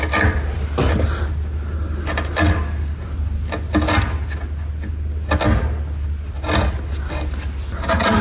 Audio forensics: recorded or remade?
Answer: recorded